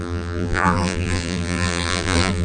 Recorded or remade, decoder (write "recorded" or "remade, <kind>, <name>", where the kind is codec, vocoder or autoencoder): remade, vocoder, BigVGAN v2